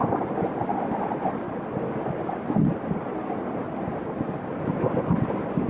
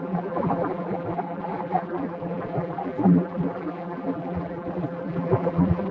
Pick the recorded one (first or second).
first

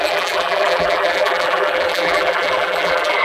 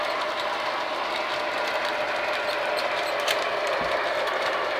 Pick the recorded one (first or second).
second